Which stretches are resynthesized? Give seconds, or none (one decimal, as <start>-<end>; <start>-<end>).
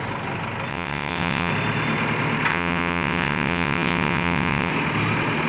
0.7-1.5; 2.5-4.7